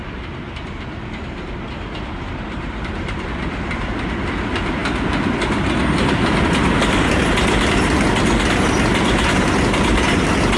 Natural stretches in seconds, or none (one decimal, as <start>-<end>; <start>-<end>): 0.0-10.6